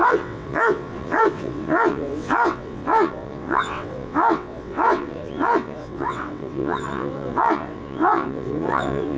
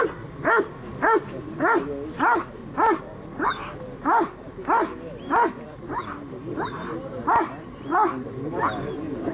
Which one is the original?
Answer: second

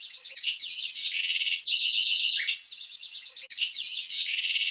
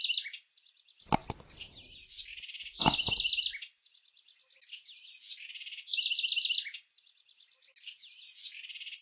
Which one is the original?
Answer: second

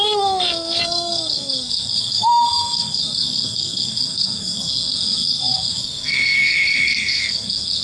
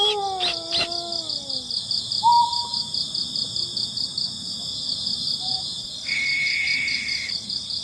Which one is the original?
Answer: second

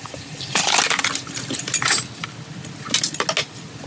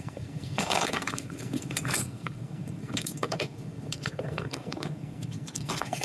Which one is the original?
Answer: first